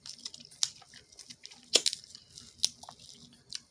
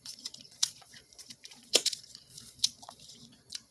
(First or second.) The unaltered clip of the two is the first